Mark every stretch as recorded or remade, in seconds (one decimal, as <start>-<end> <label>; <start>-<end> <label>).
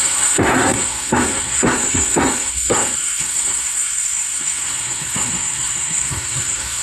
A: 0.0-6.8 remade